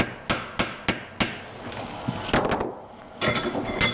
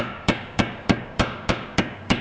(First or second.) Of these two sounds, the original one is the first